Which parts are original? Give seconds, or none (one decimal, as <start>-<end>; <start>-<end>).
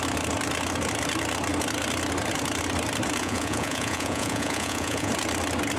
0.0-3.2; 5.1-5.8